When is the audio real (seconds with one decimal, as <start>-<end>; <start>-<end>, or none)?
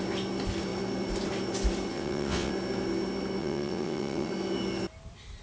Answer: 0.0-1.9; 2.5-3.4; 4.3-5.4